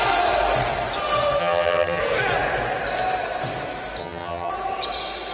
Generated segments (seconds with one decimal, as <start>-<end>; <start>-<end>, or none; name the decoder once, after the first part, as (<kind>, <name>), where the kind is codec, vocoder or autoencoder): 1.4-2.0 (vocoder, HiFi-GAN); 4.0-4.5